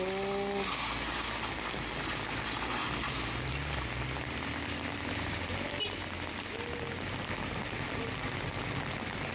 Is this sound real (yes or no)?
yes